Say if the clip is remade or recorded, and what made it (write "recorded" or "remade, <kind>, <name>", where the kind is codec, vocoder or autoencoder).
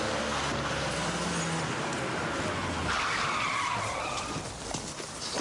recorded